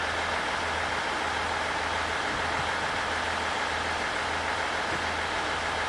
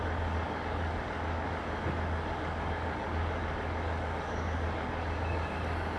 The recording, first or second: first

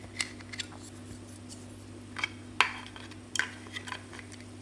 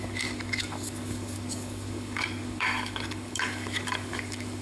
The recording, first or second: first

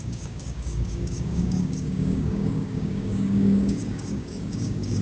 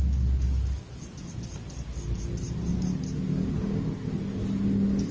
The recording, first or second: second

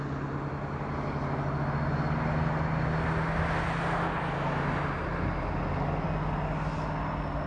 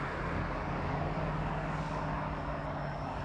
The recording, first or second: first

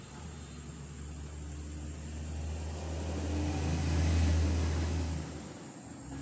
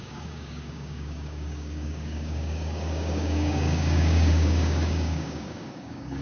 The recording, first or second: first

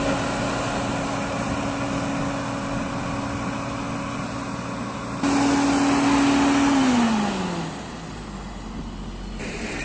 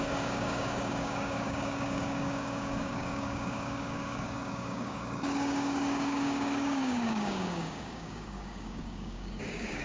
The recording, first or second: first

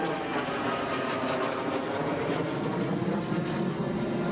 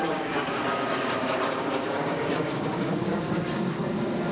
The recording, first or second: first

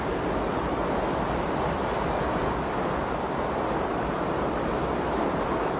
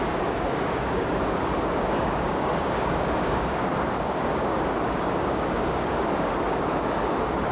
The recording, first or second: first